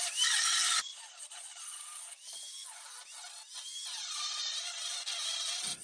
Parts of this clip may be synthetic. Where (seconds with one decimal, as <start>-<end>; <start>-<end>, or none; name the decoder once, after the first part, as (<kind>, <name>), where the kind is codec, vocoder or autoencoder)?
0.8-1.6 (vocoder, Vocos); 4.0-5.8